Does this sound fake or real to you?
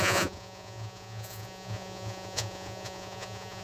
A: fake